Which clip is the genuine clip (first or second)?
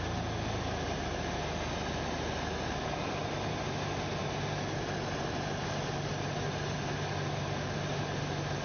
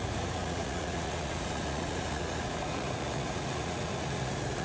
first